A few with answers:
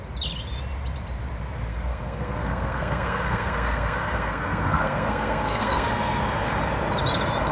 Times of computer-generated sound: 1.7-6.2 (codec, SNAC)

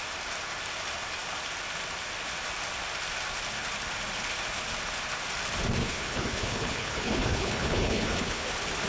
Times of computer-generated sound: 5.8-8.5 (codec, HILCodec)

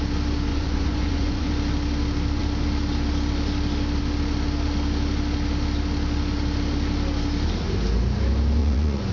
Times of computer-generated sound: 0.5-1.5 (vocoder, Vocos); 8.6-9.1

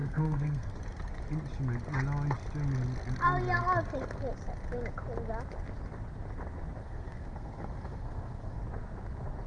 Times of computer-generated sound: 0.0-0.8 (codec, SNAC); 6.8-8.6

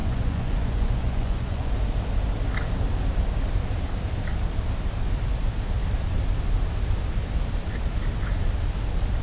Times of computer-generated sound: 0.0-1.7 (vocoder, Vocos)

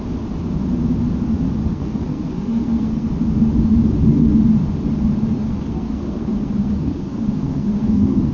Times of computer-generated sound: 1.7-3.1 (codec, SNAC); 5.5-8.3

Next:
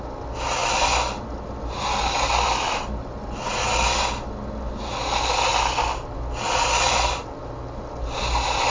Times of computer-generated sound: none

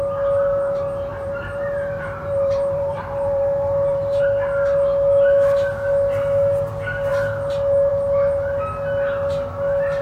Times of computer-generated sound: 1.1-4.2 (vocoder, BigVGAN v2)